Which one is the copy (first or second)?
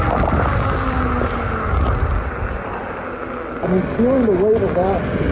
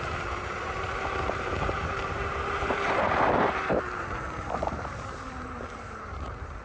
second